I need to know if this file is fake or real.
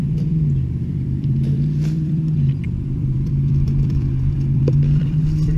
fake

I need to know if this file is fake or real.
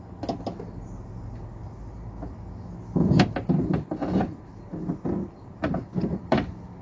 real